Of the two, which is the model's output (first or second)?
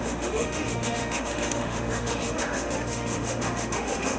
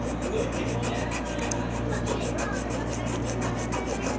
first